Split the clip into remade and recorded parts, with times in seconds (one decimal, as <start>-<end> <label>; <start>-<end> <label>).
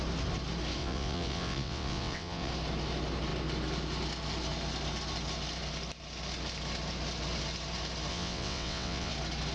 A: 0.0-0.8 recorded; 0.8-2.5 remade; 2.5-8.1 recorded; 8.1-9.1 remade; 9.1-9.5 recorded